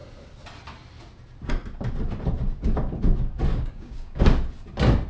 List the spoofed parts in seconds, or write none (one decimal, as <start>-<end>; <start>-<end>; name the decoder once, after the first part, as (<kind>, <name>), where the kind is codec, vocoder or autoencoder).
3.5-4.2 (codec, DAC)